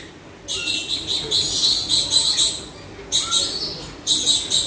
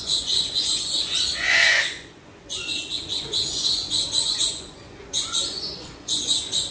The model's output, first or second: second